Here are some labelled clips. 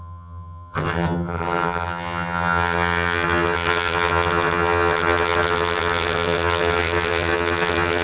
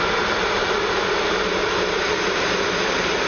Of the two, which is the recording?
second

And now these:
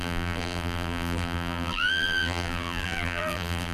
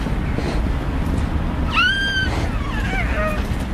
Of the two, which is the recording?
second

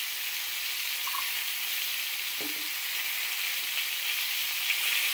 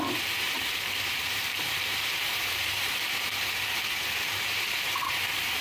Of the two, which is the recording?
first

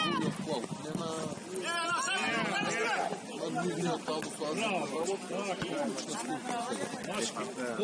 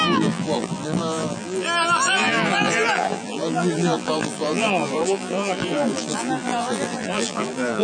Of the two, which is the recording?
first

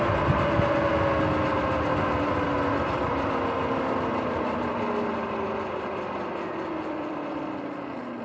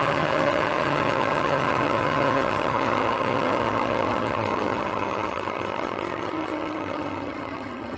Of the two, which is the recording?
first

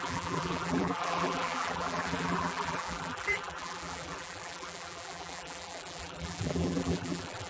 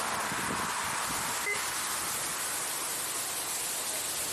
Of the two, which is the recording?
second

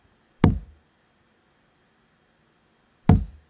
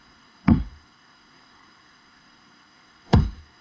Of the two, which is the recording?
first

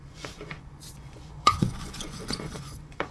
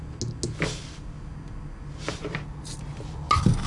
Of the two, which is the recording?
second